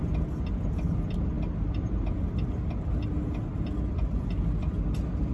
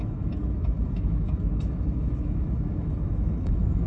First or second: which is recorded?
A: first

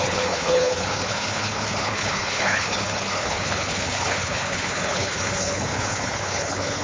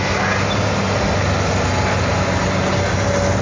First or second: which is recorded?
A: second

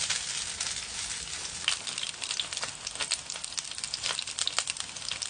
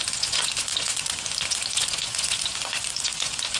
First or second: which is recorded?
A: first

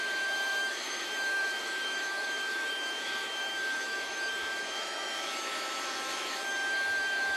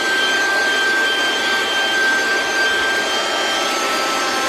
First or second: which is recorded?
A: second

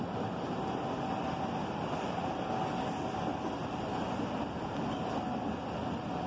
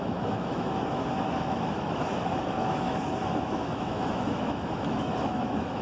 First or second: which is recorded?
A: first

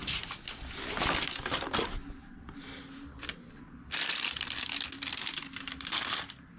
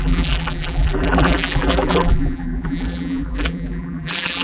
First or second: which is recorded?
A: first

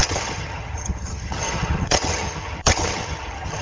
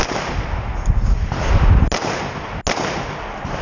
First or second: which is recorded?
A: second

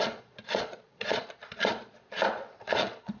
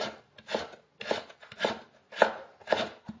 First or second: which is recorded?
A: second